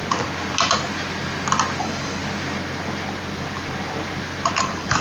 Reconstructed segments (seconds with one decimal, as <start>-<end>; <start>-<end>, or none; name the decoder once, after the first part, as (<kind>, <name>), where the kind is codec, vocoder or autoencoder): 1.8-2.2 (codec, DAC); 4.6-5.0